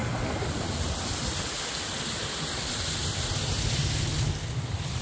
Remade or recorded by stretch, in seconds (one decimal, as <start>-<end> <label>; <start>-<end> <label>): 0.0-5.0 recorded